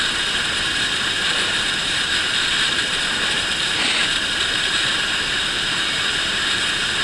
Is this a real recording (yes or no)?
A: no